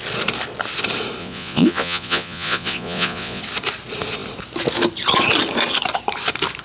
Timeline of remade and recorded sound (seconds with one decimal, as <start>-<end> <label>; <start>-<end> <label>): 0.0-1.2 recorded; 1.2-3.4 remade; 3.4-6.6 recorded